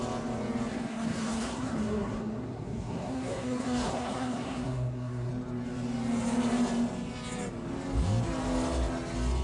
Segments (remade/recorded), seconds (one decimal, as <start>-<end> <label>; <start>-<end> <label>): 0.0-0.7 recorded; 0.7-5.3 remade; 5.3-9.4 recorded